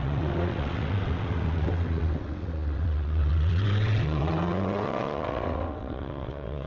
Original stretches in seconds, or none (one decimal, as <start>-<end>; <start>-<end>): none